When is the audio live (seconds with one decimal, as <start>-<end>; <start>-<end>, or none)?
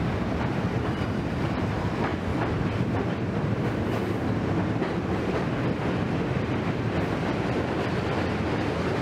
2.1-7.2